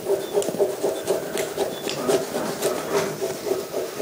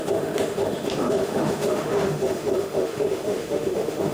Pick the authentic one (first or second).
first